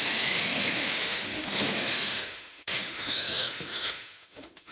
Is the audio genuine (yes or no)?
no